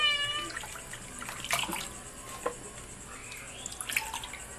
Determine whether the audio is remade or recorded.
recorded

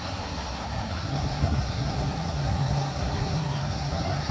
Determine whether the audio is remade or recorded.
remade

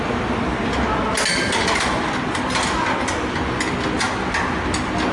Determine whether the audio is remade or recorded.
recorded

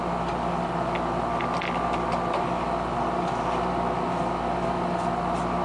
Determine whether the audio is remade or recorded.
recorded